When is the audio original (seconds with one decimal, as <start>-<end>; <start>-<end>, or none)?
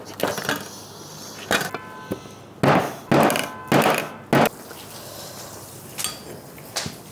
0.0-7.1